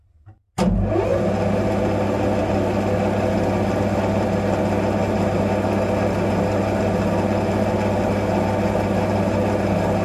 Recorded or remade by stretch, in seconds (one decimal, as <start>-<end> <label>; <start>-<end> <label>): 0.0-10.0 recorded